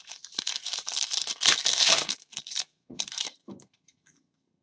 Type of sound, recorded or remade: remade